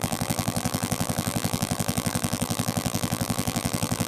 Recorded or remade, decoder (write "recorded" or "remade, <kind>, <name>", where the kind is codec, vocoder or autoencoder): remade, vocoder, BigVGAN v2